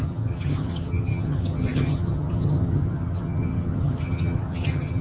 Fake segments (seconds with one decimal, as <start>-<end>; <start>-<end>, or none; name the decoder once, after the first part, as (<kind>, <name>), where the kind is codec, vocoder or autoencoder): 0.0-5.0 (vocoder, HiFi-GAN)